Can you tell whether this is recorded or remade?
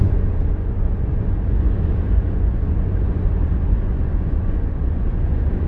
remade